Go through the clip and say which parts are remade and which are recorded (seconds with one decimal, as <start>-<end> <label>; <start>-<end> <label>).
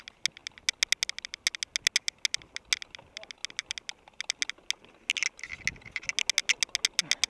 0.0-7.3 recorded